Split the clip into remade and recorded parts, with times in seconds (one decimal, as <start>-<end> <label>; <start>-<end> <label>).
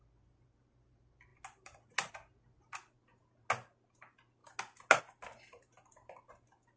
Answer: 0.0-6.8 recorded